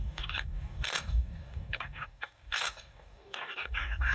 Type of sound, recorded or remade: remade